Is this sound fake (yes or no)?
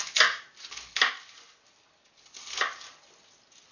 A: no